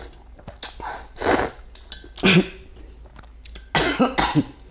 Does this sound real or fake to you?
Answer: real